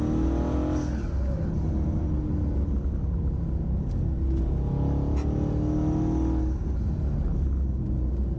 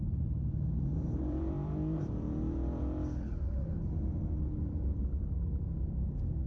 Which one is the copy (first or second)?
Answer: second